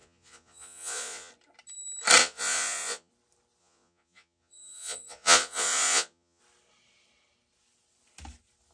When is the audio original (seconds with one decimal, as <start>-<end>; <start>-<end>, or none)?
1.3-2.2; 3.1-3.6; 6.4-8.7

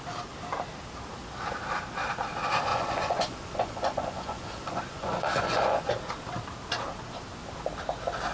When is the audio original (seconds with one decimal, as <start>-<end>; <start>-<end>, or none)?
0.0-2.7; 5.9-8.3

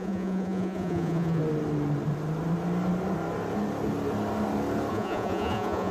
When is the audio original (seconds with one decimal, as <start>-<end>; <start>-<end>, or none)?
1.4-4.9

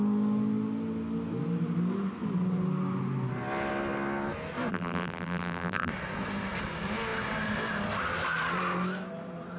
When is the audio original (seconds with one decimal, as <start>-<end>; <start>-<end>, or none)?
0.0-4.7; 5.9-9.6

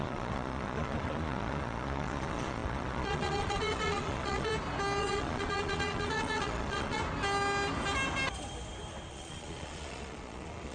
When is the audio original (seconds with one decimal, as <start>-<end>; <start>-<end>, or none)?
4.5-5.0; 7.0-9.1

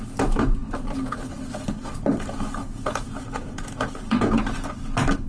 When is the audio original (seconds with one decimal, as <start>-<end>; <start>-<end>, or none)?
0.0-2.6; 4.4-5.3

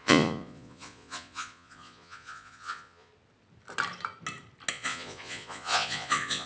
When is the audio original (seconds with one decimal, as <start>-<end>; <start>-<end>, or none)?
3.1-4.7